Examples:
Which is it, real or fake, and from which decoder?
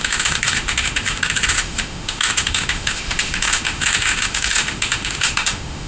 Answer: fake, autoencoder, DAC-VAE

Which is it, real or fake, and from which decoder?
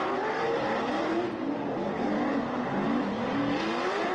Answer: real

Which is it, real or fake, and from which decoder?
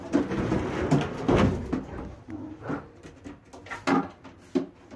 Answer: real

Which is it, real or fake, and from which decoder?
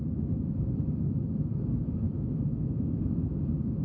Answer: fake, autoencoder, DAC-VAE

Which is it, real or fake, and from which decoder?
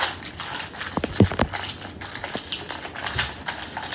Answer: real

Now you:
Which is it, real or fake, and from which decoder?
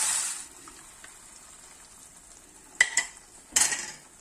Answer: real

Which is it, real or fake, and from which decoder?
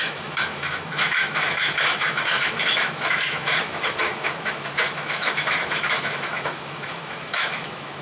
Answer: fake, autoencoder, DAC-VAE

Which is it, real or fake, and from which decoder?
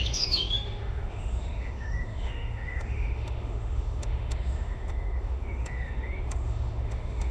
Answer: fake, autoencoder, DAC-VAE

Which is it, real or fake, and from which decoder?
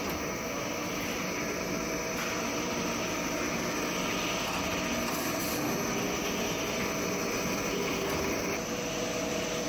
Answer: real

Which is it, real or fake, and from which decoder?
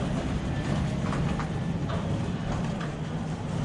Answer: real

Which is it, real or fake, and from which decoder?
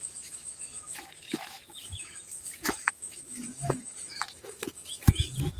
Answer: fake, autoencoder, DAC-VAE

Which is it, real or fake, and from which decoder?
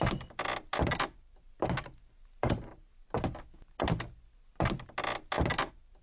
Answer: real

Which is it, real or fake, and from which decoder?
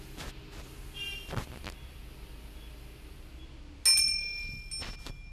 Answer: real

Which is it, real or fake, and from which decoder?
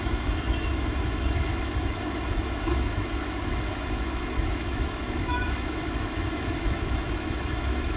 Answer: fake, autoencoder, DAC-VAE